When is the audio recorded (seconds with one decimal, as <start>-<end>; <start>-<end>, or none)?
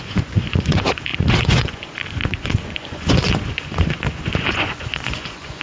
none